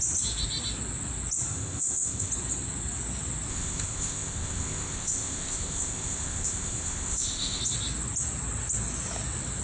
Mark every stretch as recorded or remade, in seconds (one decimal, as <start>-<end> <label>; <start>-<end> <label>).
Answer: 0.0-1.5 recorded; 1.5-2.3 remade; 2.3-3.5 recorded; 3.5-7.6 remade; 7.6-9.6 recorded